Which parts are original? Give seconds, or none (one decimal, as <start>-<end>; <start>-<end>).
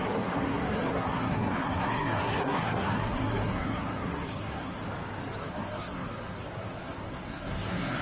4.8-5.4